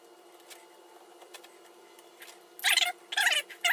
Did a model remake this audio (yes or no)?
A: no